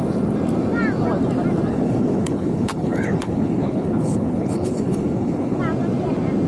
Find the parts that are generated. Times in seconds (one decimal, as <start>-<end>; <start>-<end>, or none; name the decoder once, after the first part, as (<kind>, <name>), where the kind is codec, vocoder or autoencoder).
1.7-5.6 (codec, HILCodec)